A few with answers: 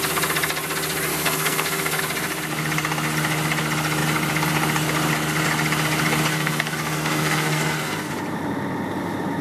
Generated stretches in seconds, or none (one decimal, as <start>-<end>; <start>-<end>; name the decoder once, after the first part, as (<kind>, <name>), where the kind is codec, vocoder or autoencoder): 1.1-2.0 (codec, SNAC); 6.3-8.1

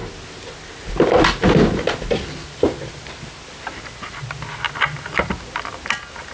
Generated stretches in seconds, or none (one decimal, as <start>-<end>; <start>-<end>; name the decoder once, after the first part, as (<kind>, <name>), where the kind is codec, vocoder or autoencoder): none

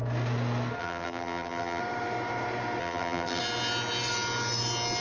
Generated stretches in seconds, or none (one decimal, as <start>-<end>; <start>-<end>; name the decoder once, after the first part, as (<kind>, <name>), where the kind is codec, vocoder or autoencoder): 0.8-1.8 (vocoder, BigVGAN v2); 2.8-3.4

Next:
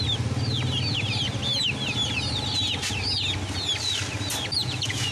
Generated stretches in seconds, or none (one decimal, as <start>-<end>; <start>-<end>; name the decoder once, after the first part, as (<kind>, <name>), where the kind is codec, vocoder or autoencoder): 4.6-5.1 (vocoder, Vocos)

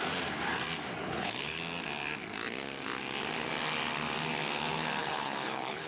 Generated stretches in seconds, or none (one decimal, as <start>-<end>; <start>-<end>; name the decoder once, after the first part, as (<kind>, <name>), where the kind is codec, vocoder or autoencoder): 1.0-1.6 (codec, HILCodec); 5.0-5.9

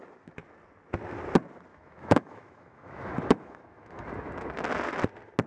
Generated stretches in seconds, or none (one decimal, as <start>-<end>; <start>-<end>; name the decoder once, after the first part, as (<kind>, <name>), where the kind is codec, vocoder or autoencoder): 1.7-4.0 (autoencoder, DAC-VAE)